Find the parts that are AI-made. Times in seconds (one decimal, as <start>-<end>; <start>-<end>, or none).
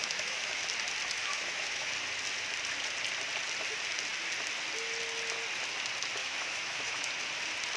0.0-0.6; 1.2-1.9; 6.2-7.1